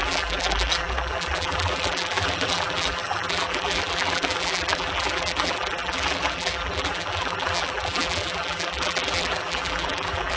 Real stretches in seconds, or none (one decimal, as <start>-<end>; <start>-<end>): none